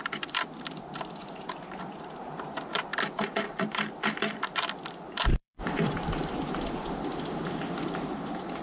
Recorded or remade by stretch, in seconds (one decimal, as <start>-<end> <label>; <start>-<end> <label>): 0.0-8.6 remade